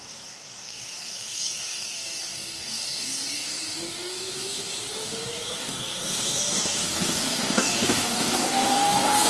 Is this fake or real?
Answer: fake